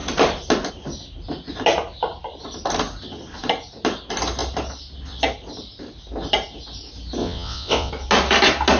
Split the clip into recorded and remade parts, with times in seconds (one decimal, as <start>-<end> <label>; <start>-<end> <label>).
0.0-7.2 recorded; 7.2-7.9 remade; 7.9-8.8 recorded